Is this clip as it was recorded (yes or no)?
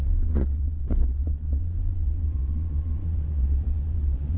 no